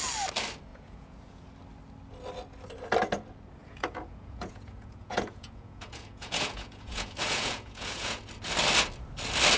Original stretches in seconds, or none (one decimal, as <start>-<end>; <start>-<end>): 0.0-0.7; 1.5-3.6; 8.2-9.6